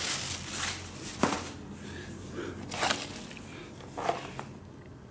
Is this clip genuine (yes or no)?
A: yes